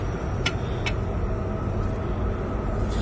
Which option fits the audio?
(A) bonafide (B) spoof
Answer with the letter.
A